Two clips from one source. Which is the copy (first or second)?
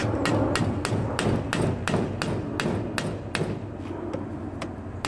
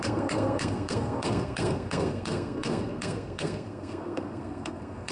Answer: second